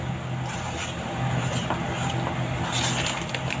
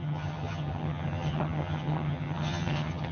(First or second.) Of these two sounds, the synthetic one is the second